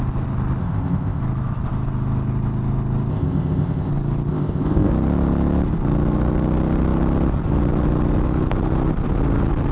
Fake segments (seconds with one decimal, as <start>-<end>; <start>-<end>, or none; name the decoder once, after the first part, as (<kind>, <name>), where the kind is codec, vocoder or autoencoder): 0.6-1.2 (codec, ZipCodec); 3.1-3.9; 4.3-4.9